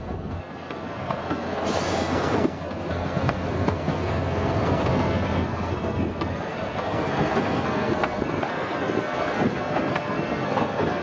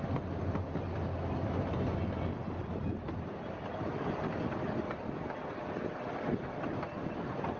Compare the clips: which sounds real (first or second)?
second